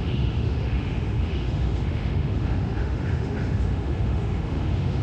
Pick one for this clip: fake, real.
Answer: fake